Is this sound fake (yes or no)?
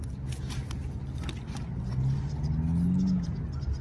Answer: no